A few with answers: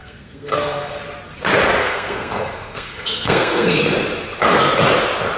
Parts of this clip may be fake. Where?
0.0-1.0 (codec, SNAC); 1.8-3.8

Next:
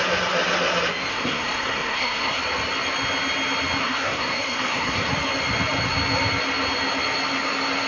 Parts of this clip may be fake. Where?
1.1-2.4 (codec, SNAC); 3.8-5.1

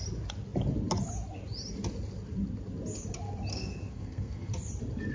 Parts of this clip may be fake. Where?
3.5-4.5 (codec, SNAC)

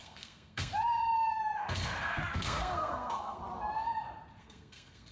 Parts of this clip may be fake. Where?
0.0-0.7 (codec, SNAC); 1.4-3.4; 4.4-5.1

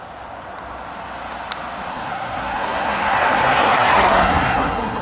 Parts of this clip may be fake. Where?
1.9-5.0 (codec, SNAC)

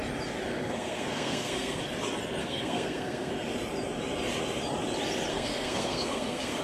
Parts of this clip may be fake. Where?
0.5-1.8 (codec, SNAC); 2.4-3.3; 5.3-6.6